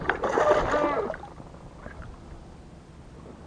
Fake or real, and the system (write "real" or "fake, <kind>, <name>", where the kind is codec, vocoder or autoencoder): real